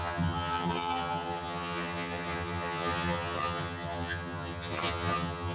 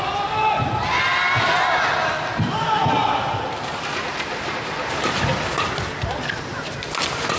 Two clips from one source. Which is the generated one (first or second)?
first